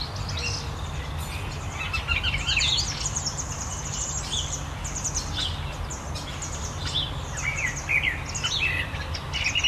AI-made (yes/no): no